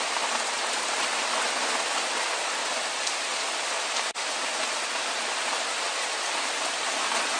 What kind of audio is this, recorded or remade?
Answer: recorded